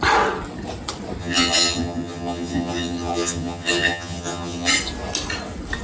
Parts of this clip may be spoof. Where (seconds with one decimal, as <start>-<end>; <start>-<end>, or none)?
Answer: 1.2-4.7